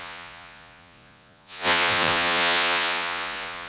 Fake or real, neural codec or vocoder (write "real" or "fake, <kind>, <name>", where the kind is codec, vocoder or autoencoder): fake, vocoder, Vocos